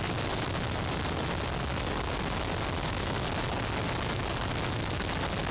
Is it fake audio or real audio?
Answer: real